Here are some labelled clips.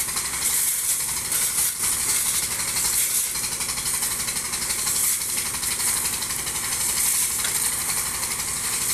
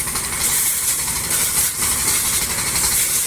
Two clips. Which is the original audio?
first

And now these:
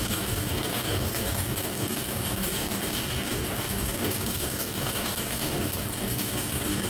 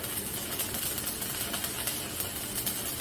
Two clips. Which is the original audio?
second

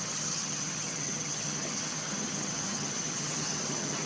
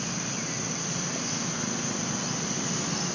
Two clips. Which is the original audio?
second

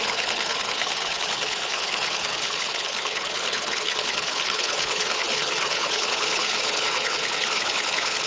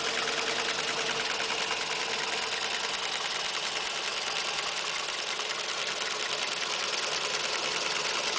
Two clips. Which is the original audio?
second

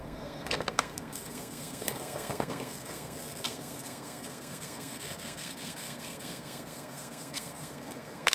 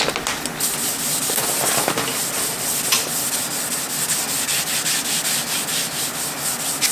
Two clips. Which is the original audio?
second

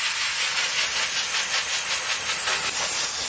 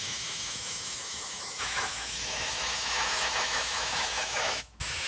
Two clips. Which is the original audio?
first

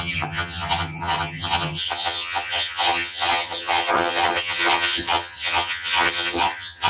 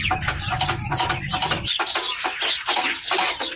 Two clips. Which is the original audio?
second